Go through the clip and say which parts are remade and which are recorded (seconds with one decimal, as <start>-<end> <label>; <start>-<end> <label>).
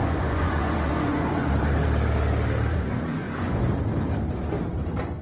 0.0-1.5 remade; 1.5-2.7 recorded; 2.7-3.7 remade; 3.7-5.2 recorded